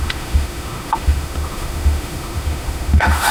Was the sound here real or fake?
fake